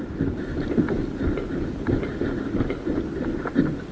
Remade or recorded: recorded